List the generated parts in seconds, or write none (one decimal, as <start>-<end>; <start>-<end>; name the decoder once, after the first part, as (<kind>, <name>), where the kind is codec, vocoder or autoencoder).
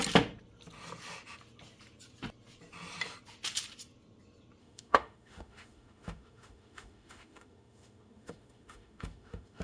4.6-9.6 (autoencoder, DAC-VAE)